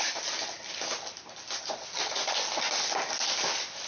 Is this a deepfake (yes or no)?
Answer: no